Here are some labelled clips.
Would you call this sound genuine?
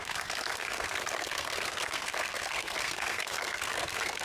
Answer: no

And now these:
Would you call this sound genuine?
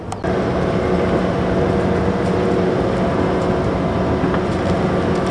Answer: yes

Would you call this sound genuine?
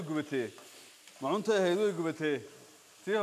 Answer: yes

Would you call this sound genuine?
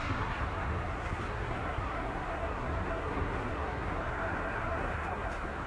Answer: no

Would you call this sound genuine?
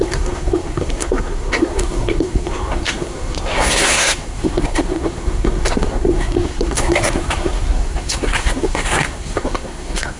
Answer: no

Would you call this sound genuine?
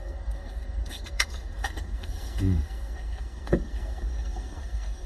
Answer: no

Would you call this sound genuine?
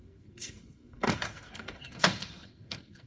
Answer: no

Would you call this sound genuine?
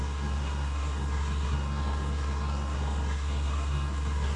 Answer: no